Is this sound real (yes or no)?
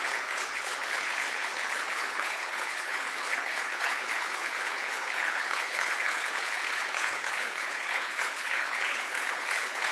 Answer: no